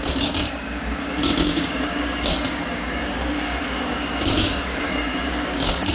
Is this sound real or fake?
fake